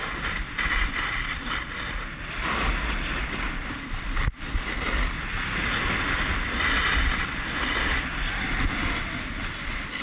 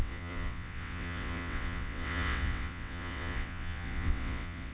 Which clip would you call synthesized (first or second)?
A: second